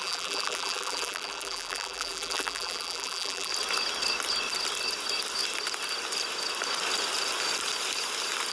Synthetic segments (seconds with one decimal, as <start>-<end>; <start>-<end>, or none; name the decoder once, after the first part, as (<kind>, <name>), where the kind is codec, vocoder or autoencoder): 0.0-3.5 (vocoder, BigVGAN v2)